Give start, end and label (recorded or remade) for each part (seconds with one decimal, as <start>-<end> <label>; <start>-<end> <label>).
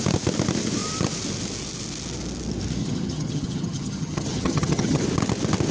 0.0-2.8 recorded; 2.8-5.0 remade; 5.0-5.7 recorded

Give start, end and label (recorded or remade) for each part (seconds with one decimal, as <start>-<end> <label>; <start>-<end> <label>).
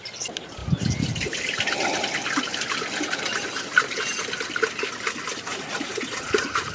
0.0-5.5 recorded; 5.5-6.7 remade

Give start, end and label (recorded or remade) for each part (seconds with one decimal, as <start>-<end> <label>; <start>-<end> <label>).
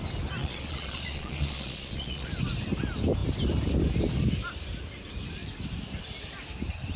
0.0-0.4 recorded; 0.4-2.3 remade; 2.3-7.0 recorded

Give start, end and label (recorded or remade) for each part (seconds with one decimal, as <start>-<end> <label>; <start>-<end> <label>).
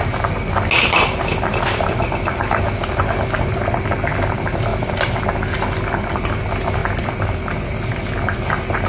0.0-8.9 recorded